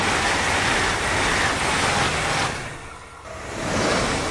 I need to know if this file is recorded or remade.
recorded